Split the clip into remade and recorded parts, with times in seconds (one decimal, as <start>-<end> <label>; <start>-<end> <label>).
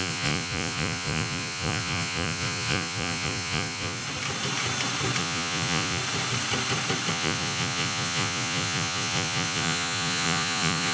0.0-4.0 remade; 4.0-5.2 recorded; 5.2-6.0 remade; 6.0-7.1 recorded; 7.1-10.9 remade